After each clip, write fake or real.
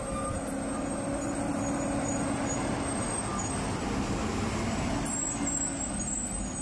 real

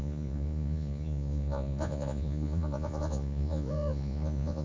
fake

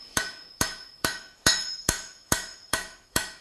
fake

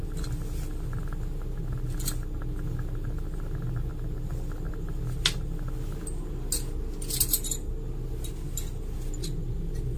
real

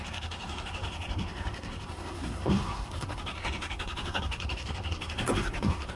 fake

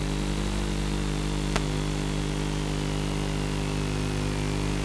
real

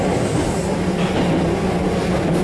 real